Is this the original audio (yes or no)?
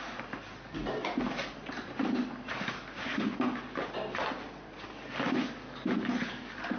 yes